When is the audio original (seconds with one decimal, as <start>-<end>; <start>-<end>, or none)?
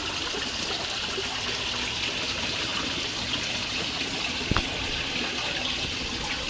0.0-6.5